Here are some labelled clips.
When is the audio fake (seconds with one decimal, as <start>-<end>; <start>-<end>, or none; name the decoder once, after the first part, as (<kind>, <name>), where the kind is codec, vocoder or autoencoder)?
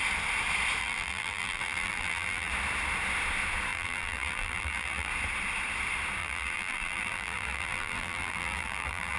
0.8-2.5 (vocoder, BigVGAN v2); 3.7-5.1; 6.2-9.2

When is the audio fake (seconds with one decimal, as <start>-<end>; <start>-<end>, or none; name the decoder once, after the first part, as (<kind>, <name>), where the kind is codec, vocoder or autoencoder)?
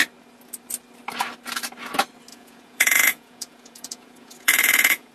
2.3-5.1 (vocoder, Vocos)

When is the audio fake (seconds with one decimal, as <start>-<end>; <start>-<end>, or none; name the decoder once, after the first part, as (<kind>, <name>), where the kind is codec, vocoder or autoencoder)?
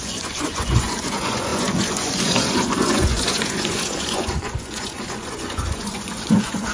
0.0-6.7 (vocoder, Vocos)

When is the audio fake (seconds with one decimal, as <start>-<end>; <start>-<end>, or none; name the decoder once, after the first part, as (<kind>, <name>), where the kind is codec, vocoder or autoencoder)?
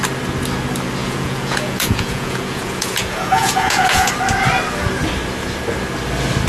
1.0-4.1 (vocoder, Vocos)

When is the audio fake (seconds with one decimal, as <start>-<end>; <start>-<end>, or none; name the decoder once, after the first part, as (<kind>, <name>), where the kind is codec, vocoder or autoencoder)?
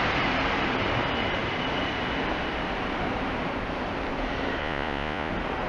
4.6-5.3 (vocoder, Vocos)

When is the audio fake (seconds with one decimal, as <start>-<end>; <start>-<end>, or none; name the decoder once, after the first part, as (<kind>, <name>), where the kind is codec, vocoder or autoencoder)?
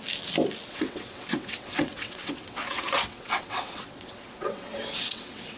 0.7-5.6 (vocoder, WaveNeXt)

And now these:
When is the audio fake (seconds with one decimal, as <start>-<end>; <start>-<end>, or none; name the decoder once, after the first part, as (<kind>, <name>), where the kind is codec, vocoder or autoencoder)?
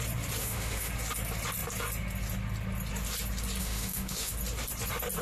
0.4-0.9 (autoencoder, DAC-VAE); 3.6-4.3